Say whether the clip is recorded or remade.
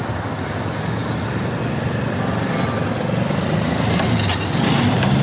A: recorded